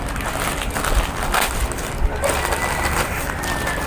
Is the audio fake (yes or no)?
no